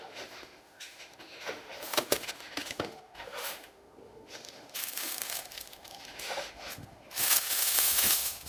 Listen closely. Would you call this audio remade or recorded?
remade